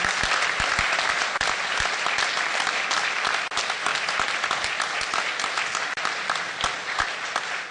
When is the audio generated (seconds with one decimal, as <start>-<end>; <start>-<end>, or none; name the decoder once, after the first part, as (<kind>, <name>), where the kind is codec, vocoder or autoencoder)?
none